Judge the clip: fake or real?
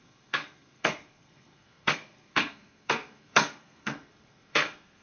fake